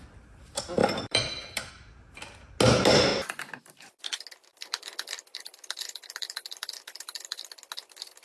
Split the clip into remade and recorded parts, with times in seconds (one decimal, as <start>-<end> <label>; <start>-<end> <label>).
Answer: 0.0-0.8 recorded; 0.8-1.7 remade; 1.7-3.1 recorded; 3.1-4.0 remade; 4.0-4.5 recorded; 4.5-7.5 remade; 7.5-8.2 recorded